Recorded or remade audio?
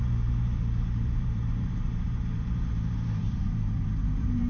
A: remade